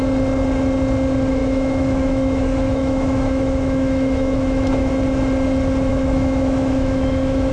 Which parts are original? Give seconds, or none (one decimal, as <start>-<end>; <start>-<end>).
0.0-1.4; 4.9-5.9